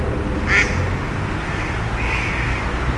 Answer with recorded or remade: recorded